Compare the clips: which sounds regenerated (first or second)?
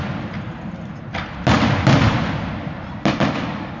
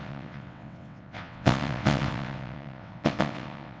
second